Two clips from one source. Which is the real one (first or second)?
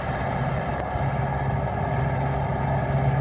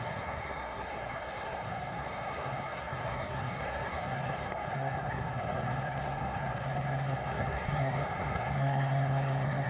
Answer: first